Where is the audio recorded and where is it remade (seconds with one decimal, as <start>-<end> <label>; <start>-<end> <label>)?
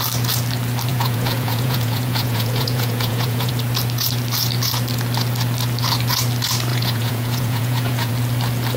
0.0-0.9 recorded; 0.9-3.5 remade; 3.5-6.7 recorded; 6.7-8.1 remade; 8.1-8.8 recorded